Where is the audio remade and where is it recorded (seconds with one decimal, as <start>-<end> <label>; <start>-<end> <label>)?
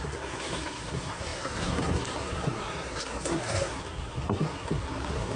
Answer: 0.0-5.4 remade